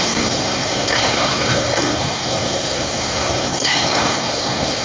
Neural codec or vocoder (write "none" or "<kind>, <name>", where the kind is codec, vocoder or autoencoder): codec, SNAC